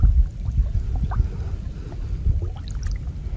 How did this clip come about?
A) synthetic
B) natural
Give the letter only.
B